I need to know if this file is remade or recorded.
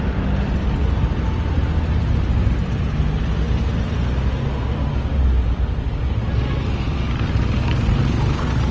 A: recorded